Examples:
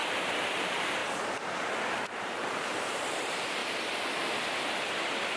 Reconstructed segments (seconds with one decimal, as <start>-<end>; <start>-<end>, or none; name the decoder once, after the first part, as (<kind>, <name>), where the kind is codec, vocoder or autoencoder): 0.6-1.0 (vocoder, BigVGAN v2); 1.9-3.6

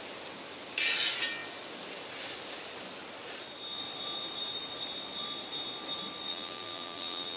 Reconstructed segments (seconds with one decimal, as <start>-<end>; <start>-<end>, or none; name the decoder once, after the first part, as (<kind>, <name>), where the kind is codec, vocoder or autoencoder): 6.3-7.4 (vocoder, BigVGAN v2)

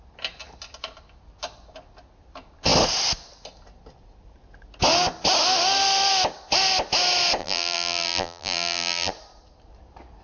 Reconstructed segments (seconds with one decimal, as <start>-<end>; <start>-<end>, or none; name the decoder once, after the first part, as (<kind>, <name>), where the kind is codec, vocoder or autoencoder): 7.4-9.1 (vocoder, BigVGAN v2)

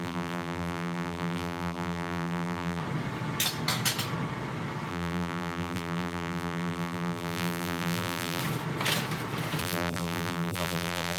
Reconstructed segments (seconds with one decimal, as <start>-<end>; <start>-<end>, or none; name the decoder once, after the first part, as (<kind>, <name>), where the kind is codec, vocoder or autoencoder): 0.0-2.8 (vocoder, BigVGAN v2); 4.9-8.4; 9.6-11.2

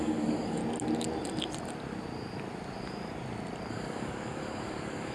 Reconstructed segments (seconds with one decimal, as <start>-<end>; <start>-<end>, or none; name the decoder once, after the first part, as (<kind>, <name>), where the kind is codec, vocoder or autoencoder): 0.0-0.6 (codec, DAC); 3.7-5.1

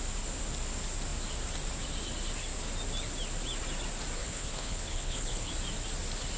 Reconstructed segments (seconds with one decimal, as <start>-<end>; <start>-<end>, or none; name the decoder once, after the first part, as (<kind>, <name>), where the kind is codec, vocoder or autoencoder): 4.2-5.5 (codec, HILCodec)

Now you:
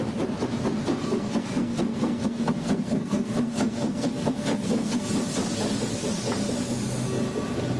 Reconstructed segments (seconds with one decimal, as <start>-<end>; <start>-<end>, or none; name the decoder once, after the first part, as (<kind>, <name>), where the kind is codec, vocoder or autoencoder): 0.9-5.1 (codec, SNAC)